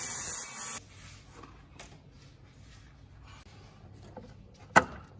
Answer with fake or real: real